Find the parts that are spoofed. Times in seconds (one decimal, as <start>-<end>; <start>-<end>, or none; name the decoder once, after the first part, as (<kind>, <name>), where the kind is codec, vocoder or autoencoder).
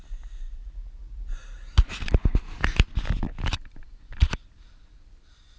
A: none